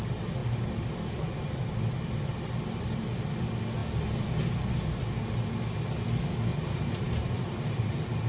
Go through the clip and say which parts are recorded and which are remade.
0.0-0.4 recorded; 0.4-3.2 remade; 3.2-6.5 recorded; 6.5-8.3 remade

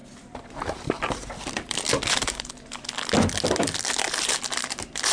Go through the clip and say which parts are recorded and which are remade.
0.0-2.5 remade; 2.5-5.1 recorded

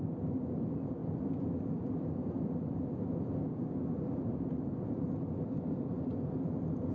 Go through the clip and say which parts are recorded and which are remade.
0.0-1.0 recorded; 1.0-1.9 remade; 1.9-4.3 recorded; 4.3-6.5 remade; 6.5-6.9 recorded

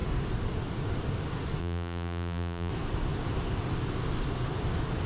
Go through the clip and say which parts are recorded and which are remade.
0.0-1.6 recorded; 1.6-2.7 remade; 2.7-5.1 recorded

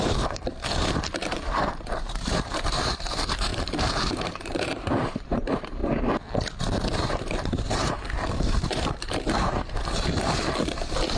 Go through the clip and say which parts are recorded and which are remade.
0.0-5.8 remade; 5.8-6.6 recorded; 6.6-11.2 remade